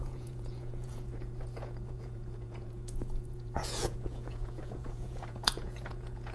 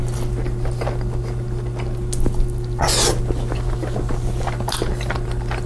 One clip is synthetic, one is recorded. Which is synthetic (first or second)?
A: first